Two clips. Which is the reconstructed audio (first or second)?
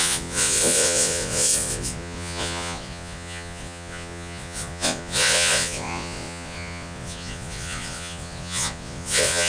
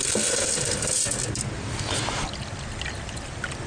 first